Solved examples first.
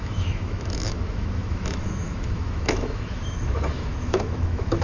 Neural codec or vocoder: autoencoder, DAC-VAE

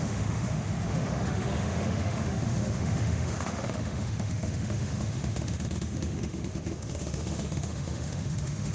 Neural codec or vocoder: autoencoder, DAC-VAE